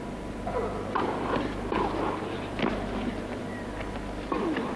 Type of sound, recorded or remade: recorded